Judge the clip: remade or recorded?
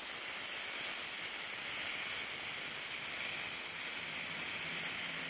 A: recorded